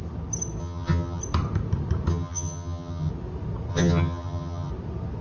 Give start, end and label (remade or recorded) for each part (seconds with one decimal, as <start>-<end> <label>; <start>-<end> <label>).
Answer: 0.0-0.6 recorded; 0.6-1.2 remade; 1.2-2.1 recorded; 2.1-3.1 remade; 3.1-3.7 recorded; 3.7-4.7 remade; 4.7-5.2 recorded